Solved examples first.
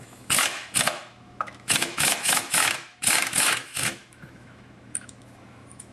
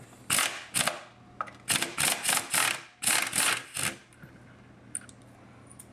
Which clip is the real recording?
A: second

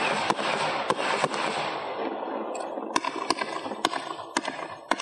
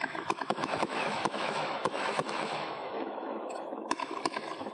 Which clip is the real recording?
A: first